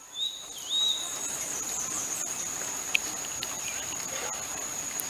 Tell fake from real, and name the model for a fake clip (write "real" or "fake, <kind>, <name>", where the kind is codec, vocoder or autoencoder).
real